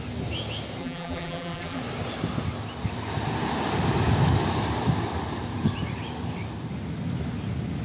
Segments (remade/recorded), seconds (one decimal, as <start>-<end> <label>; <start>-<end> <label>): 0.0-0.8 recorded; 0.8-1.8 remade; 1.8-7.8 recorded